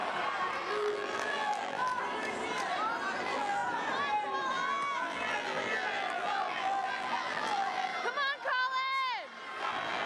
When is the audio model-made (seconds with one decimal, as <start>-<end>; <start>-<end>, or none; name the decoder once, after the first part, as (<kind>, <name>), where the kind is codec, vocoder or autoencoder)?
0.7-1.9 (vocoder, BigVGAN v2); 3.2-3.6; 4.5-7.9; 9.6-10.1